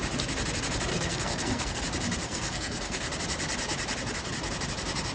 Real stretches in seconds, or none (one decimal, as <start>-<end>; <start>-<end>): 0.0-0.9; 1.8-2.2; 3.0-5.1